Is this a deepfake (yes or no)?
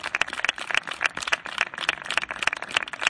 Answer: yes